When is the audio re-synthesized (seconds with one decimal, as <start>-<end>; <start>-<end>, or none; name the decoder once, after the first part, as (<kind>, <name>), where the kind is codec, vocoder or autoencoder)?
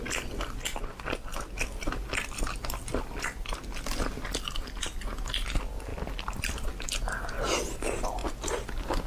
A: none